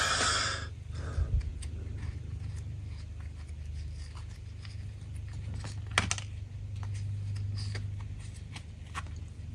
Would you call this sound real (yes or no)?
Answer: yes